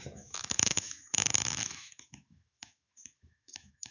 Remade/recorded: remade